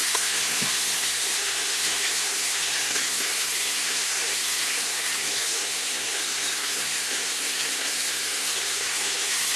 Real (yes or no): no